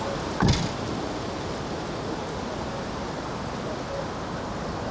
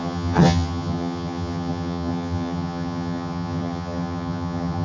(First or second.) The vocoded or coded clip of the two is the second